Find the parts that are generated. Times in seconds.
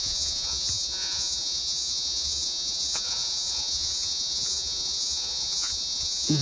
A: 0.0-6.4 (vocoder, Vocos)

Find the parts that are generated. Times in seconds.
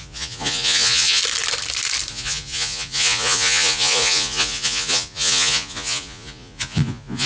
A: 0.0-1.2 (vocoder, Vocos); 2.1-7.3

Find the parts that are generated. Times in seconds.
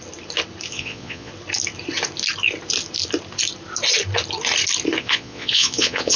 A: 0.7-1.3 (vocoder, Vocos); 5.0-6.2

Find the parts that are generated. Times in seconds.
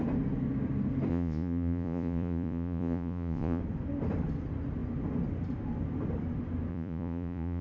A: 1.1-3.6 (vocoder, Vocos); 6.7-7.6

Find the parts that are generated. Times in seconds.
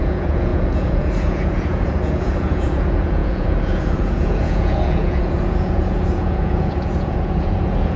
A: 0.0-8.0 (vocoder, Vocos)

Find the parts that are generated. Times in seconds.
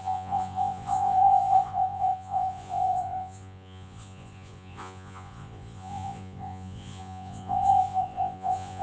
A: 0.0-8.8 (vocoder, Vocos)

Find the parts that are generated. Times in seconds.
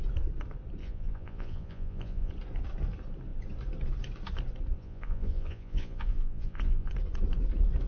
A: 0.8-2.3 (vocoder, Vocos); 4.8-6.9